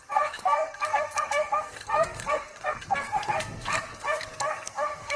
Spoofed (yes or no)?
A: yes